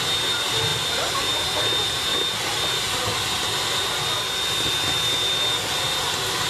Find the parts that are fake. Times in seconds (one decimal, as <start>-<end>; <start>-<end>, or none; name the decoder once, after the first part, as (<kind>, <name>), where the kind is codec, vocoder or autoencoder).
none